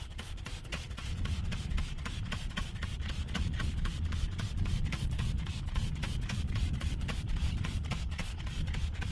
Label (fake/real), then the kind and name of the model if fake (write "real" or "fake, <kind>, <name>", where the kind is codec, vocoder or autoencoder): fake, vocoder, Vocos